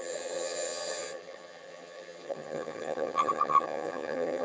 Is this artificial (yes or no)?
yes